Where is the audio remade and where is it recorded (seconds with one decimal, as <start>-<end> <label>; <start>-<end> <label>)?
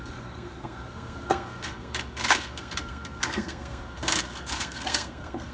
0.0-5.5 remade